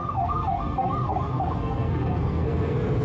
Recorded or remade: remade